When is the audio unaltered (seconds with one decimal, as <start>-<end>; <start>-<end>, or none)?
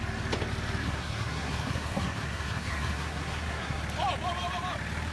0.0-0.8; 3.8-5.1